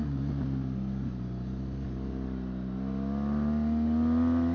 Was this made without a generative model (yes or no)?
yes